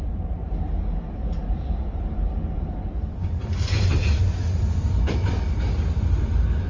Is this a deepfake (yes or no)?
no